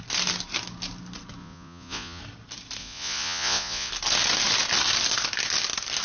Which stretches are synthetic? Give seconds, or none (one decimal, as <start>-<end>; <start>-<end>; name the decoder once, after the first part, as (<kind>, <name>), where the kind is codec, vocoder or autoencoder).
1.4-2.2 (vocoder, Vocos); 2.8-3.9